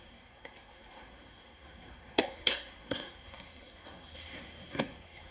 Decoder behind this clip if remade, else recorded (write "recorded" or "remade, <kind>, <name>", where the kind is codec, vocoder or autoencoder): remade, codec, SNAC